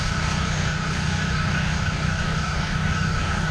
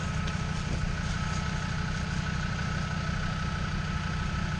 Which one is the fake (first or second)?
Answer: first